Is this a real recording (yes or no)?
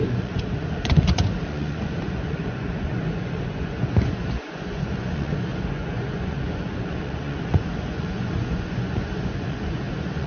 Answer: no